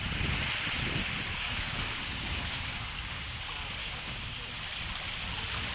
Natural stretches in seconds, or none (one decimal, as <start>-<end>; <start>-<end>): 0.0-1.3; 3.4-3.8; 4.5-5.7